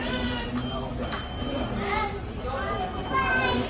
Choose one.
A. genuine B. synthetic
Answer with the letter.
A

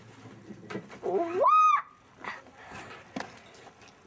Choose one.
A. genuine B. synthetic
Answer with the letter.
A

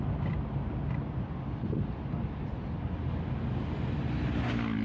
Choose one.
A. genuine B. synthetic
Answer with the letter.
A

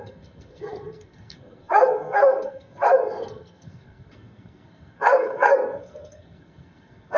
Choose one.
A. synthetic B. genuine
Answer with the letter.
A